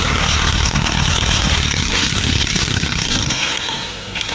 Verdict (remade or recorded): remade